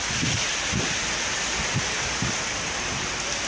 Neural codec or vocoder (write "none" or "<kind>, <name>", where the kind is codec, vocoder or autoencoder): none